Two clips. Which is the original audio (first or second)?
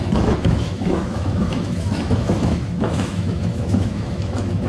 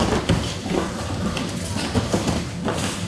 second